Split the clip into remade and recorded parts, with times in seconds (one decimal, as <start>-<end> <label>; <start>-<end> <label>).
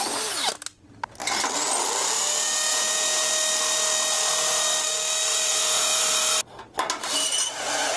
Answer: 0.0-2.7 recorded; 2.7-3.3 remade; 3.3-5.3 recorded; 5.3-6.0 remade; 6.0-8.0 recorded